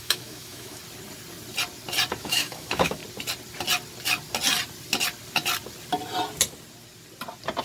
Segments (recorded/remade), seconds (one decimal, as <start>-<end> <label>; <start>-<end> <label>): 0.0-0.8 remade; 0.8-2.2 recorded; 2.2-3.0 remade; 3.0-7.6 recorded